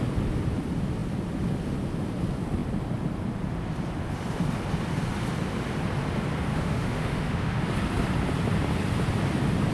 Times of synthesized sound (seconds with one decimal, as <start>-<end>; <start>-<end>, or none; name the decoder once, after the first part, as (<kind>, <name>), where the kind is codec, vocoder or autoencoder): 6.5-7.6 (autoencoder, DAC-VAE)